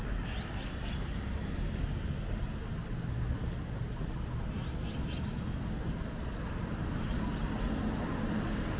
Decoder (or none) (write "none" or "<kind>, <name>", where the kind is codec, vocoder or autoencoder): none